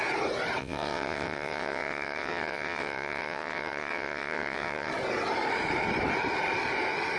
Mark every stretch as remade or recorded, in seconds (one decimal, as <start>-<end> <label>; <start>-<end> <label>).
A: 0.0-0.6 recorded; 0.6-4.9 remade; 4.9-7.2 recorded